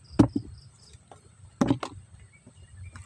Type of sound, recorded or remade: recorded